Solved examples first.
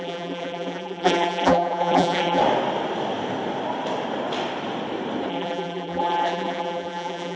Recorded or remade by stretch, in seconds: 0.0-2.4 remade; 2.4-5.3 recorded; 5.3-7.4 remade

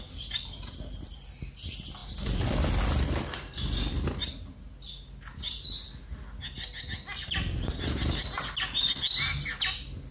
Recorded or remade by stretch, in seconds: 0.0-2.0 recorded; 2.0-2.8 remade; 2.8-10.1 recorded

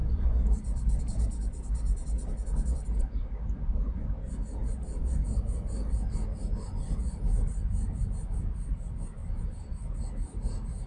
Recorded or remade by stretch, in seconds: 0.0-1.0 remade; 1.0-9.2 recorded; 9.2-10.0 remade; 10.0-10.9 recorded

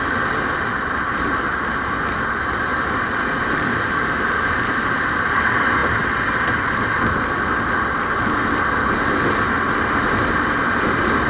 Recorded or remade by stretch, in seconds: 0.0-11.3 recorded

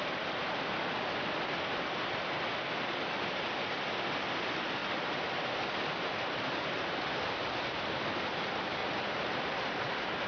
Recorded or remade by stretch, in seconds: 0.0-4.8 recorded; 4.8-7.0 remade; 7.0-8.8 recorded; 8.8-10.3 remade

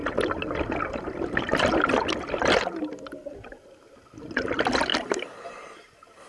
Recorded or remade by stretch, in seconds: 0.0-6.3 recorded

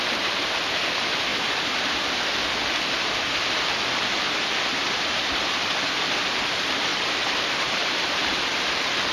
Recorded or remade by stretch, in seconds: 0.0-6.9 recorded; 6.9-8.7 remade; 8.7-9.1 recorded